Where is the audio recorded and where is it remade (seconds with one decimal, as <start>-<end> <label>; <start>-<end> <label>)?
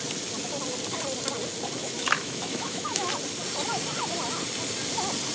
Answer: 0.0-1.8 recorded; 1.8-3.1 remade; 3.1-5.3 recorded